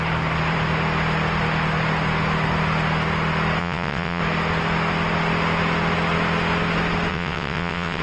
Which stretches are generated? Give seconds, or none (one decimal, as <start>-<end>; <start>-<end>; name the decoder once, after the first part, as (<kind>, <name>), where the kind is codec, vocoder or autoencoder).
3.6-4.2 (vocoder, WaveNeXt); 7.1-8.0